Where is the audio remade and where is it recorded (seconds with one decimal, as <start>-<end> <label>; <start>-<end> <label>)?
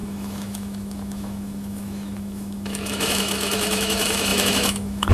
0.0-5.1 remade